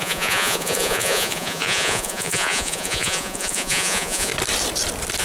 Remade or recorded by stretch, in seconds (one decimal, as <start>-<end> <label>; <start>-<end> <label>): 0.0-4.3 remade; 4.3-5.2 recorded